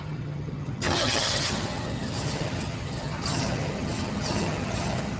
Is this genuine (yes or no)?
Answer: no